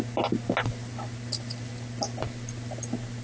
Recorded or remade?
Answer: recorded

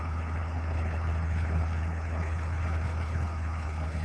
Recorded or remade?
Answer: remade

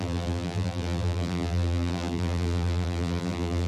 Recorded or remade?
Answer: remade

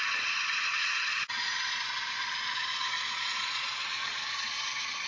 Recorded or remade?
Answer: remade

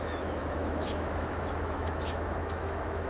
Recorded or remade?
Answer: remade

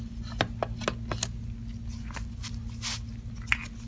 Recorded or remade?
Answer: recorded